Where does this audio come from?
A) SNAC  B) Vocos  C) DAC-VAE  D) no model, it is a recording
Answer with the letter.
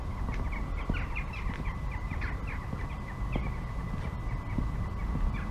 D